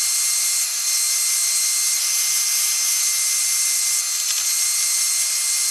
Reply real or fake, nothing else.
real